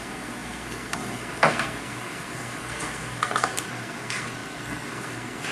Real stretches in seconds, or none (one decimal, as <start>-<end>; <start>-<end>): none